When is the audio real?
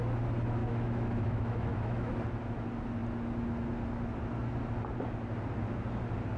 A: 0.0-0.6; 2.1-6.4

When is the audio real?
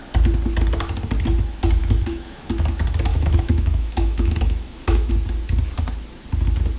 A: 0.0-1.8; 2.5-3.1; 5.1-6.8